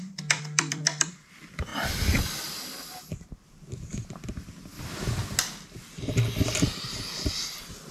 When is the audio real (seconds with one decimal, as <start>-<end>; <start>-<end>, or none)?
1.7-6.0